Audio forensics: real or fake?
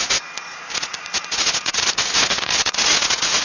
fake